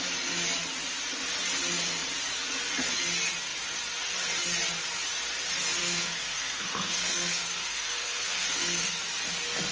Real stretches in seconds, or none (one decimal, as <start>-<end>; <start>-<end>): 0.0-5.8; 9.0-9.7